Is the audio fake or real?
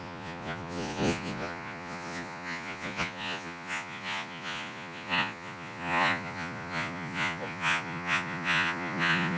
fake